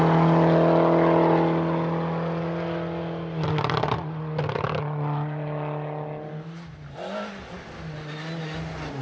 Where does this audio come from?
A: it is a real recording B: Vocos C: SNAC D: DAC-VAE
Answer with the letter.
A